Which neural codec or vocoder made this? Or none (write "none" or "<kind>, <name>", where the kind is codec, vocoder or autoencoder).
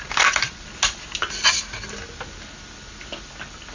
none